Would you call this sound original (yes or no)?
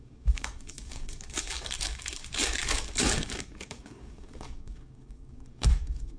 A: no